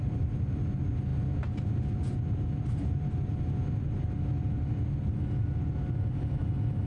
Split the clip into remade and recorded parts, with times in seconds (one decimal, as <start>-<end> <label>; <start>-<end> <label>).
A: 0.0-6.9 recorded